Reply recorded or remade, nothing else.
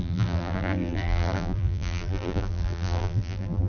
remade